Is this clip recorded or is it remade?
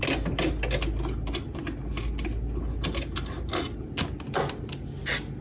recorded